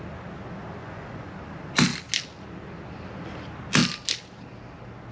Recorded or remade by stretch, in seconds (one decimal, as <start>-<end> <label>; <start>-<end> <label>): 0.0-0.8 recorded; 0.8-1.3 remade; 1.3-5.1 recorded